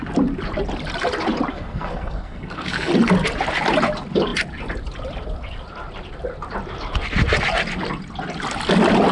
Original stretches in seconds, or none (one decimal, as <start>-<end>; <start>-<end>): 0.0-1.5; 2.9-9.1